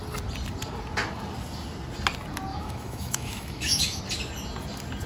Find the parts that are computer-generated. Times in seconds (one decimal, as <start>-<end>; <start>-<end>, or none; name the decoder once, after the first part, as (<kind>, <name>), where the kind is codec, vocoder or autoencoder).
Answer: 2.5-4.0 (autoencoder, DAC-VAE)